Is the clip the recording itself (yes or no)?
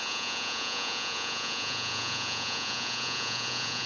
no